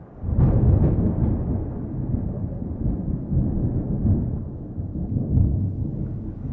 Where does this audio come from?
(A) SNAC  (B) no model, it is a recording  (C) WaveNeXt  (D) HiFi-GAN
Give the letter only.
B